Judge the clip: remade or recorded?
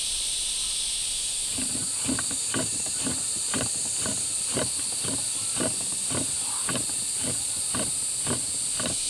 recorded